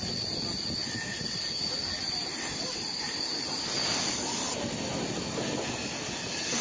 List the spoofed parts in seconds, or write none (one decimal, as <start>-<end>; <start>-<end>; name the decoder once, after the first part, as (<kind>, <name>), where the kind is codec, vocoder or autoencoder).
2.2-3.0 (vocoder, BigVGAN v2)